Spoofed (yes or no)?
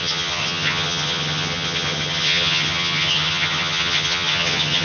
yes